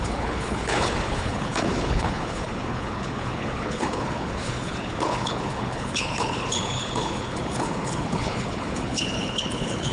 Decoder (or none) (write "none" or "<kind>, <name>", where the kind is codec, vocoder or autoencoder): codec, HILCodec